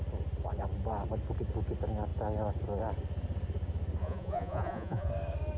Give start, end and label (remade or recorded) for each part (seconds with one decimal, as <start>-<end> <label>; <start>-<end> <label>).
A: 0.0-4.0 recorded; 4.0-5.1 remade; 5.1-5.6 recorded